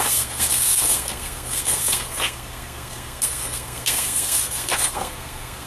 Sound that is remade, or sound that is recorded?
remade